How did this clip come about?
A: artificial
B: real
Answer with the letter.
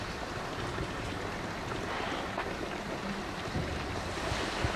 B